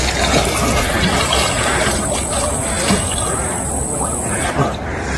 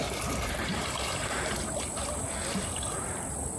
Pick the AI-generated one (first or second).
second